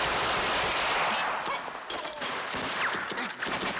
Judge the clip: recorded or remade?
recorded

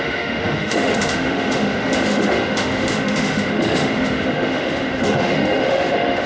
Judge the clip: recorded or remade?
remade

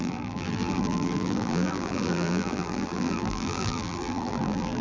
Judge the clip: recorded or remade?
remade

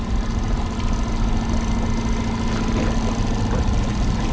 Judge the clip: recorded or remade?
recorded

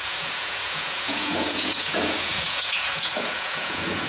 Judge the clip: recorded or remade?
remade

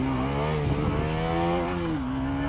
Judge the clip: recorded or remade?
recorded